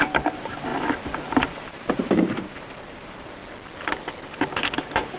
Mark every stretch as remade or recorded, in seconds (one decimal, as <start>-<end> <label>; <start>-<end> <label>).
0.0-3.4 remade; 3.4-4.5 recorded; 4.5-5.2 remade